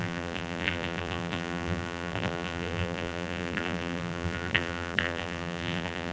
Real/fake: fake